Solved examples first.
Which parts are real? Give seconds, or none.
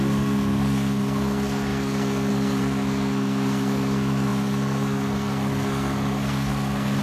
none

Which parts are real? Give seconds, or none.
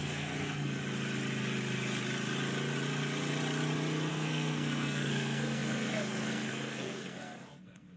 0.8-4.1